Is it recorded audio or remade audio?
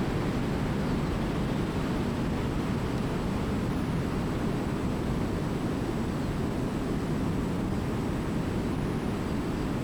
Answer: recorded